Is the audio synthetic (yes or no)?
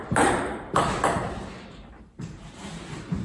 yes